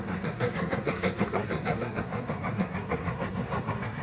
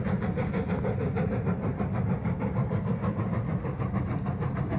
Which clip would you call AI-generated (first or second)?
first